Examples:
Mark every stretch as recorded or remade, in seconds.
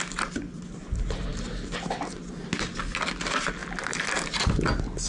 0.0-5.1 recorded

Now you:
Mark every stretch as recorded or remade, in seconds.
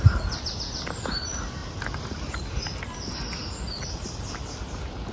0.0-5.1 recorded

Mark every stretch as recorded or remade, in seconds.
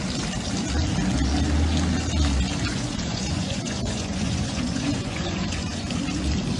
0.0-2.7 recorded; 2.7-6.0 remade; 6.0-6.6 recorded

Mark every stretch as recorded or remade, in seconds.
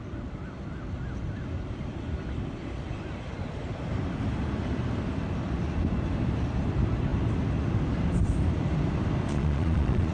0.0-9.3 recorded; 9.3-10.1 remade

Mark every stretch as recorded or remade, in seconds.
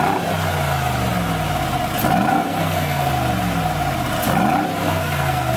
0.0-2.3 recorded; 2.3-3.1 remade; 3.1-4.8 recorded; 4.8-5.6 remade